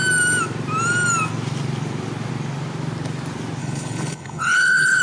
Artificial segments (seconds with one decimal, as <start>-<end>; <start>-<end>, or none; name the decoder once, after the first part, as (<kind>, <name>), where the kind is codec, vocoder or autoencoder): 3.6-5.0 (codec, HILCodec)